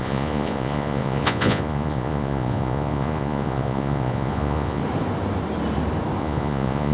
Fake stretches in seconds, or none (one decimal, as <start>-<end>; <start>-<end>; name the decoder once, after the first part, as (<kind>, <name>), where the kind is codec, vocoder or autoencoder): 0.0-4.8 (vocoder, Vocos); 6.2-6.9